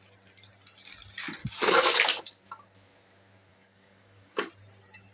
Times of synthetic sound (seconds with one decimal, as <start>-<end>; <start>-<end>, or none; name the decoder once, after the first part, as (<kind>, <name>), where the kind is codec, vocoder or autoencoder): 1.4-2.2 (codec, DAC); 3.5-4.5